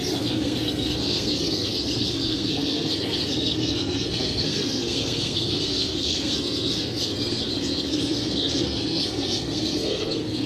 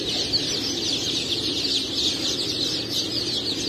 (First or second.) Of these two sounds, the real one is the second